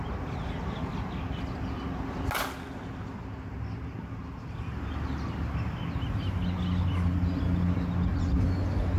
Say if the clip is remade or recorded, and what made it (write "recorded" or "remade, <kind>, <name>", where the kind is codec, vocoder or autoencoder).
recorded